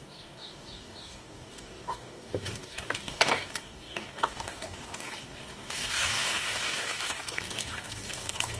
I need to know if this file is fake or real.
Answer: fake